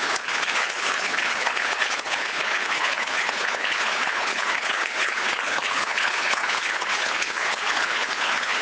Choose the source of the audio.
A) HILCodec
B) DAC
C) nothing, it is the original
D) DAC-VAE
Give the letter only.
A